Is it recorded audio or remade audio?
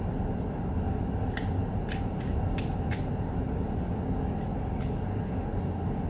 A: recorded